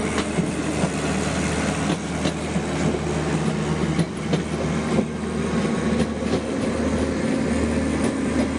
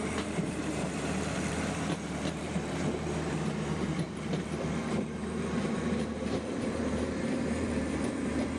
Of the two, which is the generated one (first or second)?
second